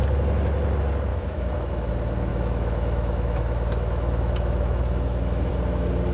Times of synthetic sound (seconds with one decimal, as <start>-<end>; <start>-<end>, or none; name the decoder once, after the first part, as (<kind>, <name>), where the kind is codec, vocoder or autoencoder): 1.1-1.9 (autoencoder, DAC-VAE); 2.3-5.5